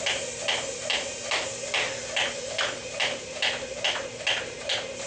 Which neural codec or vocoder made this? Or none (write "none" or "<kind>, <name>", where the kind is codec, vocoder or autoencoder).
none